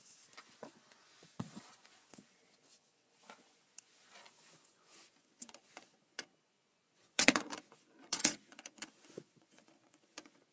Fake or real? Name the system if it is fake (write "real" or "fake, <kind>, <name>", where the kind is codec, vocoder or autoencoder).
fake, vocoder, Vocos